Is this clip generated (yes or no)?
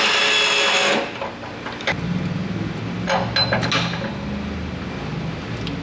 no